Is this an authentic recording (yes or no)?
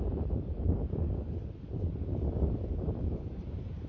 yes